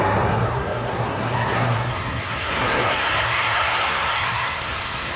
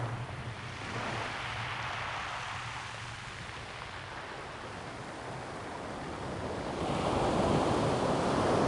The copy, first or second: first